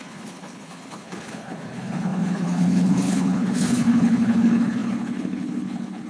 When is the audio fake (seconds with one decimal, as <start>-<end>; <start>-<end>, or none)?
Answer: 0.0-6.1